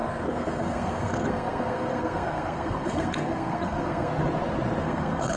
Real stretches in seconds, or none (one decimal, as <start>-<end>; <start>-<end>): 4.1-4.8